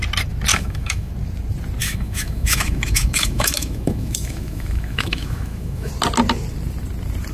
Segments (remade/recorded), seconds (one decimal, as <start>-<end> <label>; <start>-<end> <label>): 0.0-0.5 recorded; 0.5-1.1 remade; 1.1-1.8 recorded; 1.8-5.9 remade; 5.9-7.3 recorded